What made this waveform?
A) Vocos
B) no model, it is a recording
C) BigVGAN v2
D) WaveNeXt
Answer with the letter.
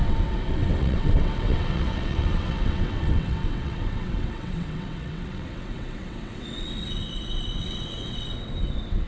D